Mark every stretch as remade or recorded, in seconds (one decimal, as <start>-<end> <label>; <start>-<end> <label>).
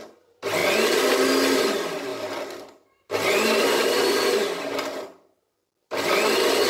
0.0-6.7 recorded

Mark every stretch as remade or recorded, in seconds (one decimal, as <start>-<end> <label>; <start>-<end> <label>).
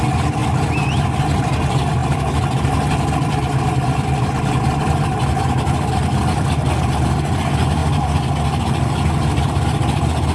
0.0-10.3 recorded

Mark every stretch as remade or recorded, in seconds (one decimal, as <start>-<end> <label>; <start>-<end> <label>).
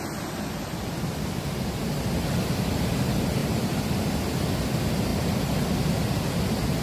0.0-6.8 recorded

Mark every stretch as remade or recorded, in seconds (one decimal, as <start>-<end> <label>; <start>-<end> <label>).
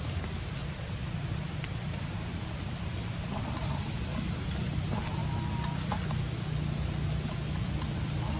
0.0-0.6 recorded; 0.6-2.6 remade; 2.6-5.2 recorded; 5.2-5.9 remade; 5.9-8.4 recorded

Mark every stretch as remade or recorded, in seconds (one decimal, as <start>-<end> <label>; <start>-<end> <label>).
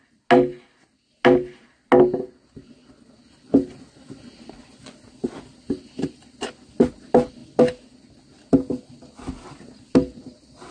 0.0-10.7 recorded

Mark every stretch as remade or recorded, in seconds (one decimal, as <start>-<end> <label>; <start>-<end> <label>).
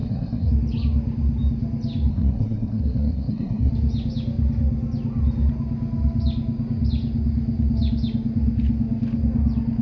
0.0-0.5 remade; 0.5-2.1 recorded; 2.1-3.7 remade; 3.7-9.8 recorded